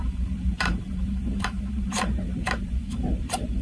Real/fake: fake